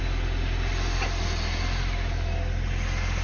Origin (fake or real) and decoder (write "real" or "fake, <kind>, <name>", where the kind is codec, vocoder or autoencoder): real